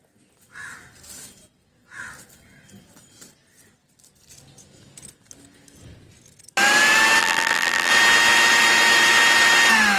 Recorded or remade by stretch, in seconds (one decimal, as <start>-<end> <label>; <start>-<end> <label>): 0.0-7.2 recorded; 7.2-7.9 remade; 7.9-10.0 recorded